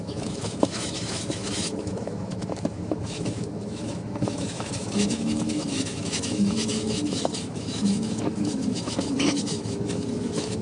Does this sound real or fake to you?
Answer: fake